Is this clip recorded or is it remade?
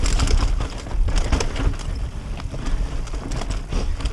recorded